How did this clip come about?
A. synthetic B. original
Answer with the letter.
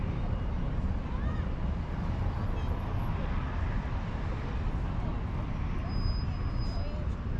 B